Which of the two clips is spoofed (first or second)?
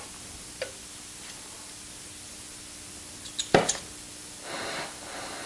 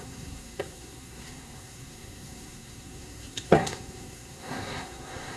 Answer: second